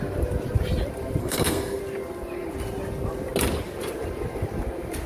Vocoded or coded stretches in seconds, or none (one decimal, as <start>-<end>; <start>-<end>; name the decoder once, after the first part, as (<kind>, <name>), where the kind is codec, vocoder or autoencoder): 1.2-1.8 (codec, SNAC)